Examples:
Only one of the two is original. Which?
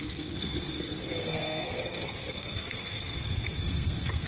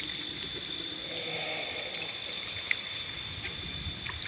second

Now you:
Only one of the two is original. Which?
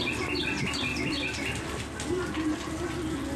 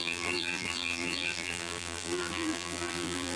first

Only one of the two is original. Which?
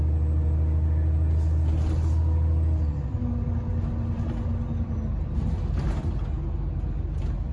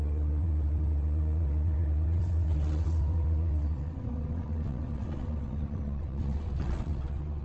first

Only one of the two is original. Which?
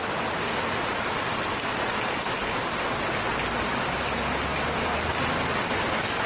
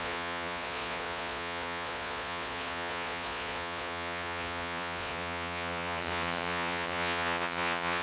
first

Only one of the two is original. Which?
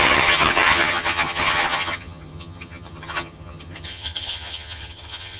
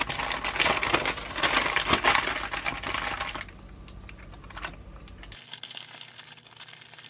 second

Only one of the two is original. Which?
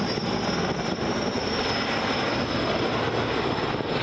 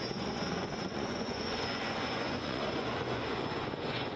first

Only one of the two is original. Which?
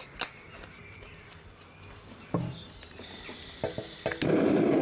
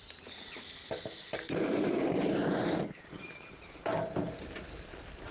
first